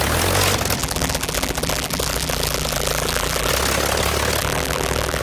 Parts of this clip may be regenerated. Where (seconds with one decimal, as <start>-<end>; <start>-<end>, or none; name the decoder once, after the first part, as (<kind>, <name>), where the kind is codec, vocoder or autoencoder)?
0.8-3.5 (vocoder, BigVGAN v2); 4.4-5.2